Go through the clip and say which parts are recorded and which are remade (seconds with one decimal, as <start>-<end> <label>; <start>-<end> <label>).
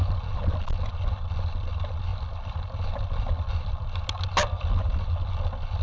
0.0-5.8 recorded